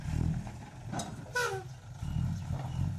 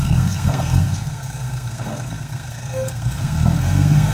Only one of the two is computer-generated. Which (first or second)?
second